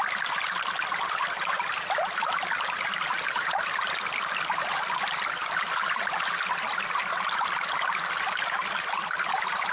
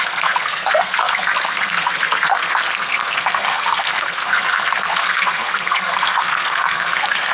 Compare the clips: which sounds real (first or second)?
first